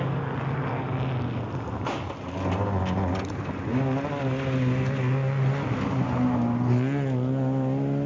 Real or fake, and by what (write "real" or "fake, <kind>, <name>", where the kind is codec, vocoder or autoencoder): real